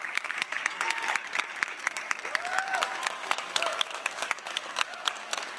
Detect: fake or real fake